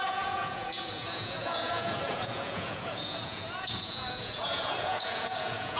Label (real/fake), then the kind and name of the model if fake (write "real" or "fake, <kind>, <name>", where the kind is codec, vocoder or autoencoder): fake, vocoder, Vocos